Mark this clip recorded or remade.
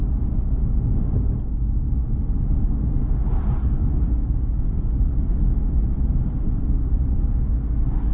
recorded